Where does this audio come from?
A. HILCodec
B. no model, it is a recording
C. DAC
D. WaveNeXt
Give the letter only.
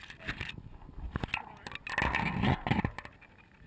B